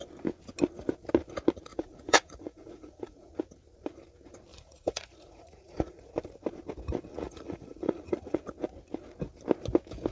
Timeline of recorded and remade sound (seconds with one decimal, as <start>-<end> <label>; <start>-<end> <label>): 0.0-1.7 recorded; 1.7-3.3 remade; 3.3-4.5 recorded; 4.5-6.1 remade; 6.1-7.1 recorded; 7.1-8.4 remade; 8.4-10.1 recorded